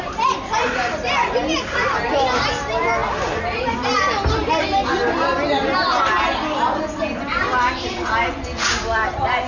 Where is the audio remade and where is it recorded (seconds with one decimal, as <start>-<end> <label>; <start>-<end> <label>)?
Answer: 0.0-7.4 recorded; 7.4-8.7 remade; 8.7-9.5 recorded